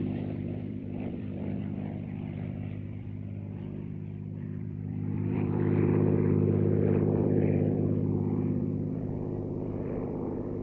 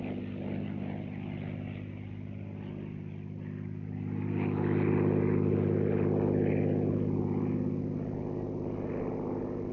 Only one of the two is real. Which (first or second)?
second